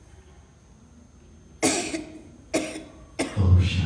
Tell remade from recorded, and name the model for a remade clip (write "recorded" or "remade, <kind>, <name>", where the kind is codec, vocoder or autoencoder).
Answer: recorded